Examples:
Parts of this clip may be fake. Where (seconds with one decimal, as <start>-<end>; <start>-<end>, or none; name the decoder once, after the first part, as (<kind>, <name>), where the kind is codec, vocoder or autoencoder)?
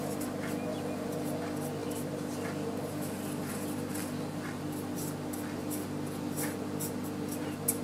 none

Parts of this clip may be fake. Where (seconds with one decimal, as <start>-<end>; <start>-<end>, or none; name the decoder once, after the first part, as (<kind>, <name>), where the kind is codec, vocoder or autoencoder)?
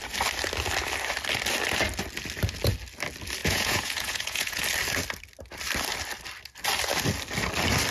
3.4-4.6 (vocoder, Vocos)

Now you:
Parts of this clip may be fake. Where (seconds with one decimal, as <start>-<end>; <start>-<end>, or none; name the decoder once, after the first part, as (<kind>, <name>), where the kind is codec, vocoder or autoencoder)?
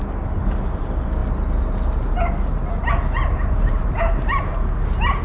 none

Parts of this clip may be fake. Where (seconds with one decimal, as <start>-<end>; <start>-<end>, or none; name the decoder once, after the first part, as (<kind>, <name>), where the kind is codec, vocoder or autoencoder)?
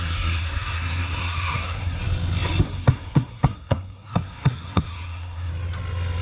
0.0-2.0 (codec, SNAC); 2.6-5.5